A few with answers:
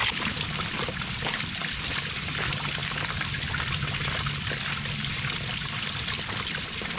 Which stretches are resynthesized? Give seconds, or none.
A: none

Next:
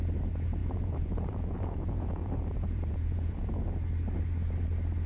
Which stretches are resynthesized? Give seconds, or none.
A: 0.6-3.7

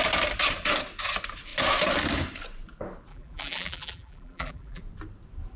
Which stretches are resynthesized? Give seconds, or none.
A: 3.1-4.8

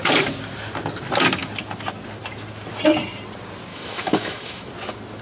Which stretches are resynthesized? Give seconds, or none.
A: 3.7-4.7

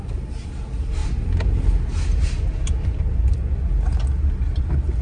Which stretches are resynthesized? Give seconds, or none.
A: none

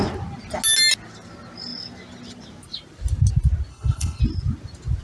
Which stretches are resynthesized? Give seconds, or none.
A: 3.7-4.2

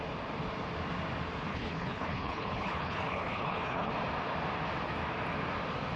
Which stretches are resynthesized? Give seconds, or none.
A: 1.5-3.9

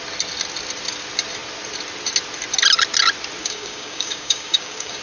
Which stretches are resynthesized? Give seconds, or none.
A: 3.4-5.0